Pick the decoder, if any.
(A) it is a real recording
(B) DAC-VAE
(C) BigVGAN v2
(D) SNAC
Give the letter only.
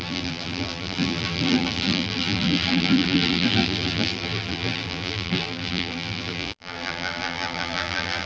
C